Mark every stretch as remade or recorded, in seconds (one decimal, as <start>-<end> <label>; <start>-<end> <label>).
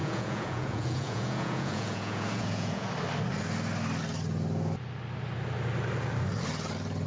0.0-2.9 remade; 2.9-7.1 recorded